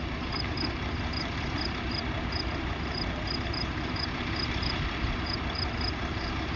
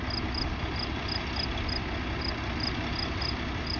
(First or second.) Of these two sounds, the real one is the second